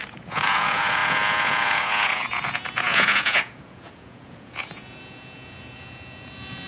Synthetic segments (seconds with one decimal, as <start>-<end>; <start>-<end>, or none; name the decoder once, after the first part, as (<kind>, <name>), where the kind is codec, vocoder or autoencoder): 0.0-6.7 (vocoder, Vocos)